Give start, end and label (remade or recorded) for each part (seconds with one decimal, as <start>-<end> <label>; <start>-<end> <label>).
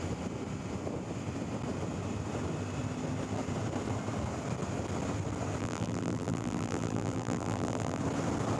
0.0-5.6 recorded; 5.6-8.0 remade; 8.0-8.6 recorded